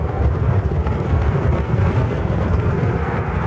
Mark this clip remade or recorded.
remade